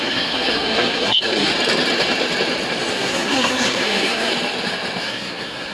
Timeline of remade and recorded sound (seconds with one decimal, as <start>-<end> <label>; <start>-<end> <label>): 0.0-1.5 remade; 1.5-2.9 recorded; 2.9-4.3 remade; 4.3-5.0 recorded; 5.0-5.7 remade